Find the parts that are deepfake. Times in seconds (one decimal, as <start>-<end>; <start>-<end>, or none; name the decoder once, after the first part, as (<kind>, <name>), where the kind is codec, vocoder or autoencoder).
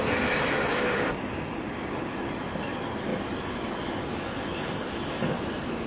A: 0.0-3.1 (vocoder, BigVGAN v2); 5.5-5.9